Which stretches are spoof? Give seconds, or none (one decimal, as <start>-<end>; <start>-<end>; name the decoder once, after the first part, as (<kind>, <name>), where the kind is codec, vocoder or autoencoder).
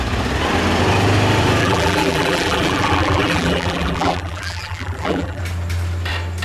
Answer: 1.6-5.4 (vocoder, BigVGAN v2)